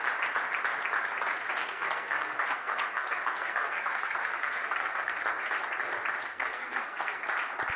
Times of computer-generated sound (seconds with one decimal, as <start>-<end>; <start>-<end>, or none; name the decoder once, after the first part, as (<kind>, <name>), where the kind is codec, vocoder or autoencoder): 1.6-5.4 (codec, SNAC); 6.3-7.2